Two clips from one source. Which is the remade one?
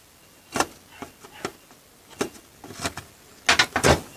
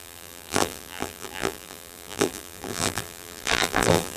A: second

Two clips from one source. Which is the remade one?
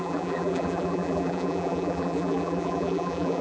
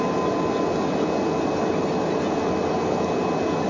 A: first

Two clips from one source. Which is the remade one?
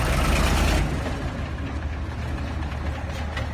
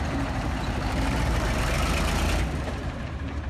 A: second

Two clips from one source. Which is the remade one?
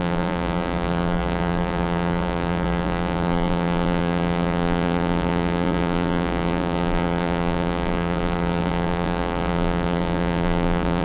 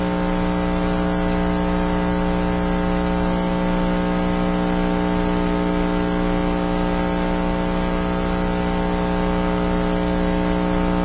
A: first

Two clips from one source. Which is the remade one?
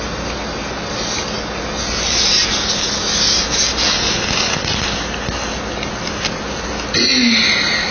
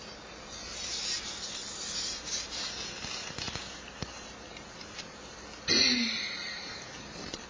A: second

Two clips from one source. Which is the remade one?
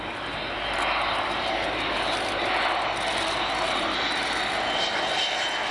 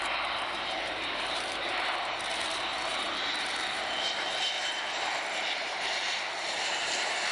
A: second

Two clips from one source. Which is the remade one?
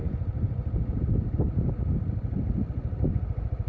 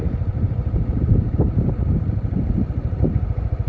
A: second